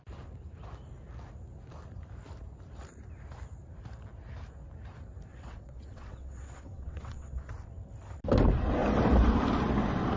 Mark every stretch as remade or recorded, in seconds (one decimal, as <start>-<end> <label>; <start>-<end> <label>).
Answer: 0.0-5.3 recorded; 5.3-7.5 remade; 7.5-10.2 recorded